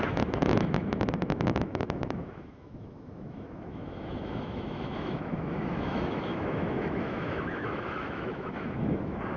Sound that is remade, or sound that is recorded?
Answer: remade